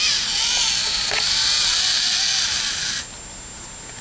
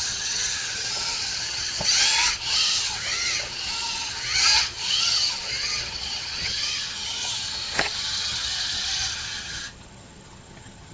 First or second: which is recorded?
first